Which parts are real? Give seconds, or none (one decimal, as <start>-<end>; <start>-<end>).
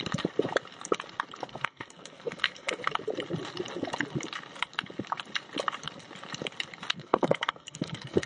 0.0-1.5; 2.8-6.9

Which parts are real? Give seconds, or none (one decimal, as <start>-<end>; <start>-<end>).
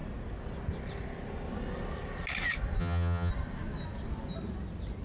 0.0-2.8; 3.3-5.0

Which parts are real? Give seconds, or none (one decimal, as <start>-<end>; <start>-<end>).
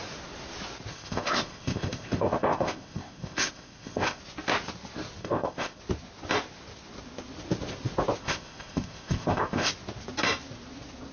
0.0-0.9; 4.2-5.2; 5.8-8.2; 9.7-11.1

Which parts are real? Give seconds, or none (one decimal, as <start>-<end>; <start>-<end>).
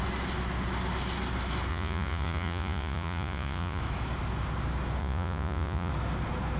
0.0-1.7; 3.8-5.0; 5.9-6.6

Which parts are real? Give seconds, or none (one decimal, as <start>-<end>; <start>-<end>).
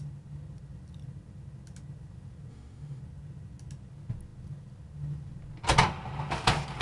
0.0-2.5; 3.0-6.8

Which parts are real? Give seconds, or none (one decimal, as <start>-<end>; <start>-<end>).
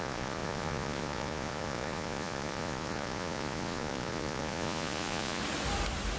5.4-6.2